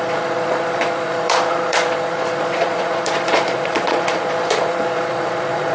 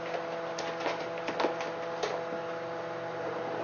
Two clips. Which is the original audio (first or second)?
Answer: second